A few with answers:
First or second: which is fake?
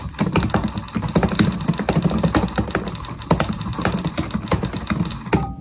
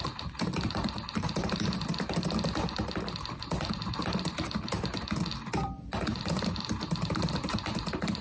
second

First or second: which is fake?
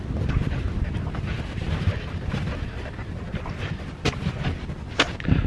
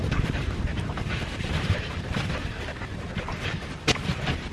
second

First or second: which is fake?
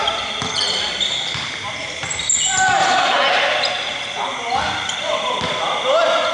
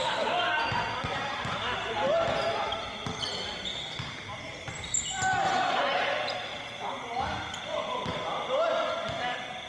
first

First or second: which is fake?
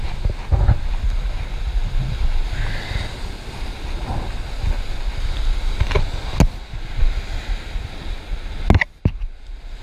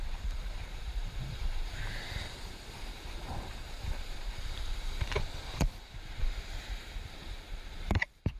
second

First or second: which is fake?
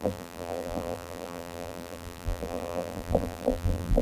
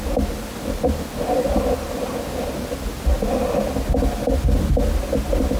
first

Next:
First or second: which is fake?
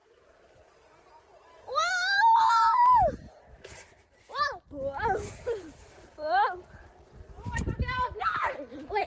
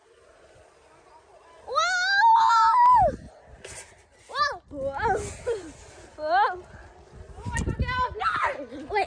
first